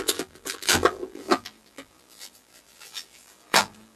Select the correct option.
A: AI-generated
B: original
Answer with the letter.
A